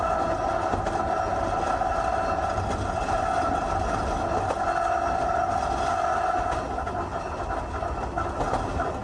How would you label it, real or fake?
real